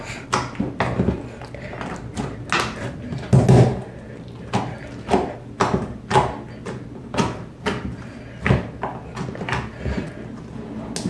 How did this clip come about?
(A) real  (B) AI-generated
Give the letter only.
A